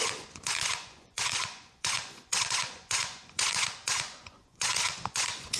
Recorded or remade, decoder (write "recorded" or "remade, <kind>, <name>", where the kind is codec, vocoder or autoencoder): remade, vocoder, Vocos